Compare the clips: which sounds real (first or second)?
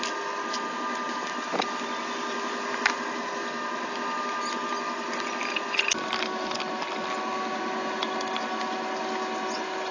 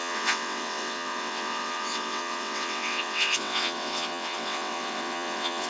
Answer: first